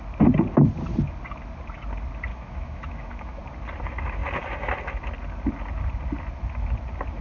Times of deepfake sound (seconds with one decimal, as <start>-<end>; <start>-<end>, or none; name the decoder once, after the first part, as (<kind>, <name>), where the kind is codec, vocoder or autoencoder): 2.3-3.4 (autoencoder, DAC-VAE)